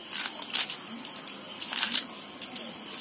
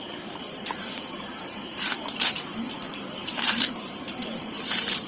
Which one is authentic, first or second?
first